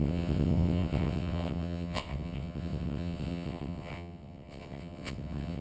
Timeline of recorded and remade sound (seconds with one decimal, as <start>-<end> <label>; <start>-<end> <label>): 0.0-5.6 remade